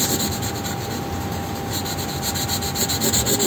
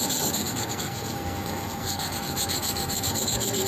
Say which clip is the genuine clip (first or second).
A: first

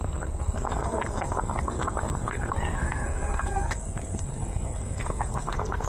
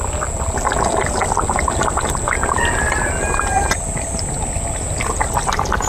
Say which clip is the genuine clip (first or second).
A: second